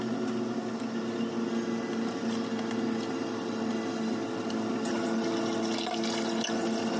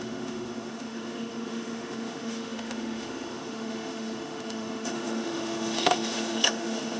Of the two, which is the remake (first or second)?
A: second